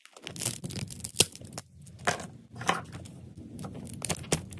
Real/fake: real